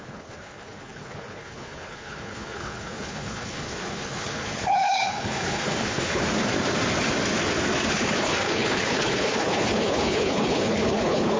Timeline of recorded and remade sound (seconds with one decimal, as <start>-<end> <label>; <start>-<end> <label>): 0.0-6.2 remade; 6.2-7.9 recorded; 7.9-11.4 remade